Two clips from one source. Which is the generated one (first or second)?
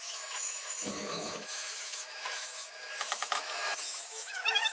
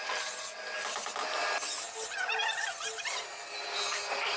first